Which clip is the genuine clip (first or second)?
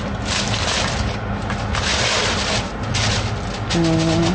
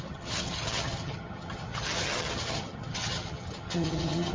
first